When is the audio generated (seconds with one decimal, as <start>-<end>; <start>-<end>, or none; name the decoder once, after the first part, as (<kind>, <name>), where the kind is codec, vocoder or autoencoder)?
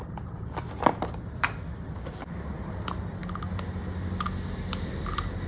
0.0-3.2 (vocoder, BigVGAN v2); 5.0-5.5